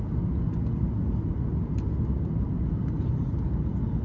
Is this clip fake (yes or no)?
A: no